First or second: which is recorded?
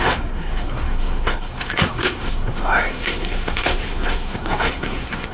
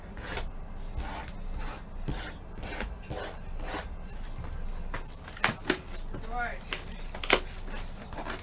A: second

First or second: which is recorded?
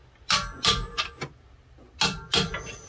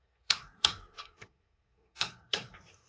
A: first